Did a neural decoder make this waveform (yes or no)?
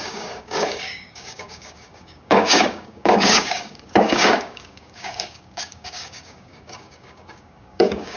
yes